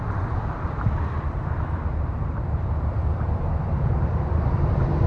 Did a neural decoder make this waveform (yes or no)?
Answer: yes